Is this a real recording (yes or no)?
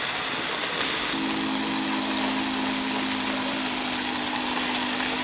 yes